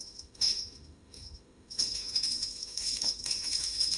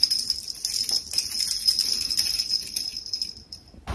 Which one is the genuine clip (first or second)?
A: second